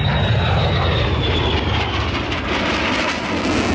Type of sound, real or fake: real